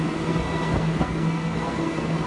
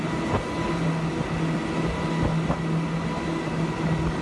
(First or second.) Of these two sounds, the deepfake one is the first